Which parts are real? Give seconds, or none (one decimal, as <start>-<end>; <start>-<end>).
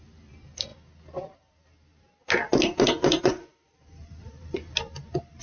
0.7-3.2